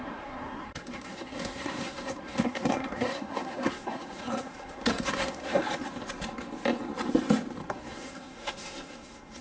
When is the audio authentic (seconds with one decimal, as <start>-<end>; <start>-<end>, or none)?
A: 5.6-7.7